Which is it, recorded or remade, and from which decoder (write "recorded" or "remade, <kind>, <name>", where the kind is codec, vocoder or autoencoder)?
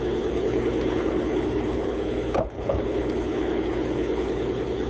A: remade, codec, HILCodec